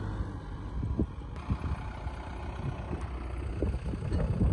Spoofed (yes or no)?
no